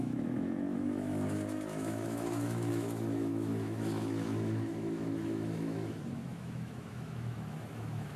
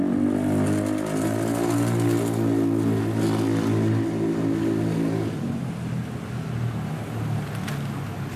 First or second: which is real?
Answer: second